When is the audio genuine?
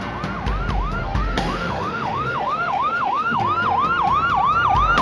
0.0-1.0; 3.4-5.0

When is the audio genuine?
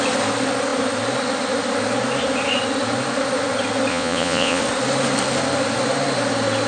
0.0-3.9; 4.6-6.7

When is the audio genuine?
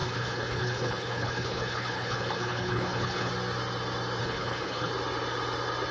3.3-4.2; 4.9-5.9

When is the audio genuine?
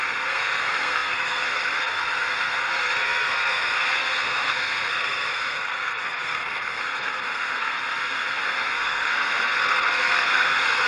none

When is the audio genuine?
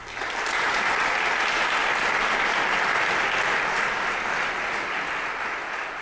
0.0-1.8; 3.1-6.0